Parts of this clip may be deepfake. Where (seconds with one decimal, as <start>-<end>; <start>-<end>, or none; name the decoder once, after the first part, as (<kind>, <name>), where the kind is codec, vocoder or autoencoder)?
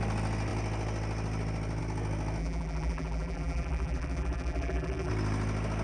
2.4-5.1 (vocoder, BigVGAN v2)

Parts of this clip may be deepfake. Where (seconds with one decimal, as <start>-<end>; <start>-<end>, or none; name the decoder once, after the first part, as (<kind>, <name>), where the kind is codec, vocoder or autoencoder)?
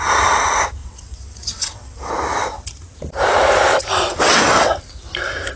0.8-2.1 (vocoder, WaveNeXt); 4.1-4.7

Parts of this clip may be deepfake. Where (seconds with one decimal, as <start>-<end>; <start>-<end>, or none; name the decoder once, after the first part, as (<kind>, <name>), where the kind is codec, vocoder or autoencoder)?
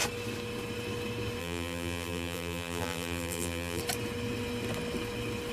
1.4-3.8 (vocoder, BigVGAN v2)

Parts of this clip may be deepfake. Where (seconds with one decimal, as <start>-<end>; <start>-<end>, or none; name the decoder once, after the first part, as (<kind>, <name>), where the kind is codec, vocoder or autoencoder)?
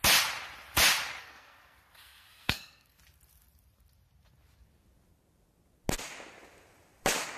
1.2-3.0 (codec, SNAC)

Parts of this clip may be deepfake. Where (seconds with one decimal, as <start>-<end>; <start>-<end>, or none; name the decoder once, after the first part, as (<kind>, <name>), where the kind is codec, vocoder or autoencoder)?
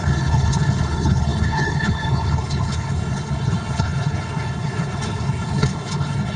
0.0-6.4 (codec, HILCodec)